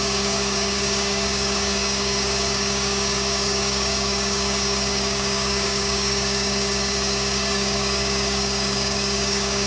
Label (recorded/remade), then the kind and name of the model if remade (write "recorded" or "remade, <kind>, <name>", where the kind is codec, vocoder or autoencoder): remade, codec, DAC